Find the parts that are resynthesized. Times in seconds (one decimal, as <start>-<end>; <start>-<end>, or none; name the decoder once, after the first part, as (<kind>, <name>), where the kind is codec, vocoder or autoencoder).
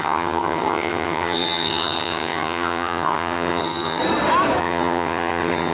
0.0-4.0 (vocoder, HiFi-GAN); 4.6-5.7